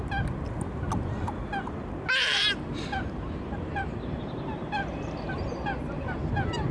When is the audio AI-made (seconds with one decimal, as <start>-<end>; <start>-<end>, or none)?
2.2-6.2